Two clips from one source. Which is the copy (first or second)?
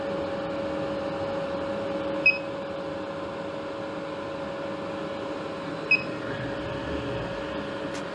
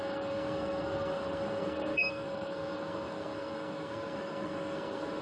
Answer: second